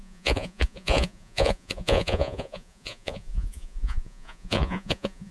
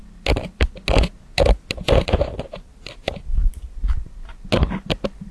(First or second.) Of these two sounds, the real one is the second